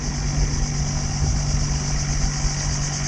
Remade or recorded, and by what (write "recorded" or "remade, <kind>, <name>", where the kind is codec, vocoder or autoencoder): recorded